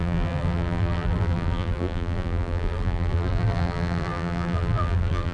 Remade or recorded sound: remade